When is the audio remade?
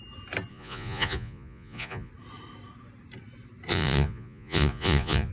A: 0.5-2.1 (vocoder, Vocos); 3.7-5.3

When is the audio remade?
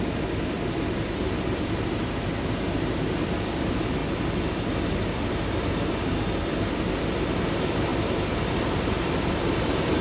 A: 0.0-10.0 (vocoder, BigVGAN v2)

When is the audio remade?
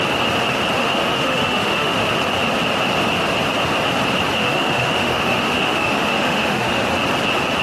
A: 0.8-2.1 (autoencoder, DAC-VAE); 4.4-6.8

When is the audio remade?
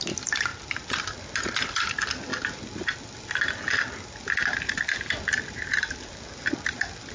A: none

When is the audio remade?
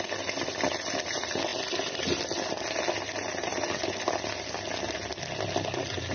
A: none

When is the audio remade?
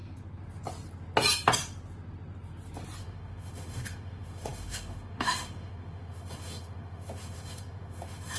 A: 3.0-8.4 (autoencoder, DAC-VAE)